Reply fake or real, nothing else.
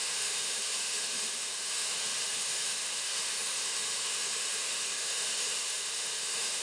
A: fake